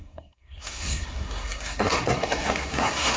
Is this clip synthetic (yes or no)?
yes